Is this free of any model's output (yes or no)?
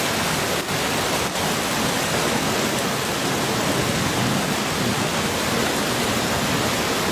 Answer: yes